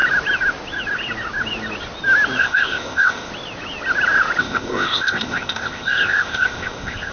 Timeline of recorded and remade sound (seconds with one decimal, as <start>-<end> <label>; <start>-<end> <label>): 0.0-2.4 recorded; 2.4-3.3 remade; 3.3-4.4 recorded; 4.4-7.1 remade